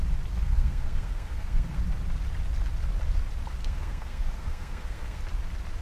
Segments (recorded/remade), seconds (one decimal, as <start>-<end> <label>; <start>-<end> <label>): 0.0-0.4 recorded; 0.4-1.8 remade; 1.8-3.6 recorded; 3.6-5.2 remade; 5.2-5.8 recorded